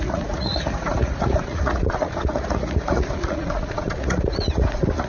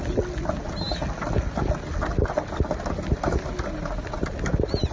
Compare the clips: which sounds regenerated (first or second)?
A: first